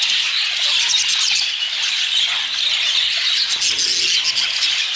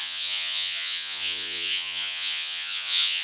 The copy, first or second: second